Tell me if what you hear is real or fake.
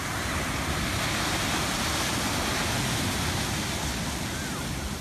real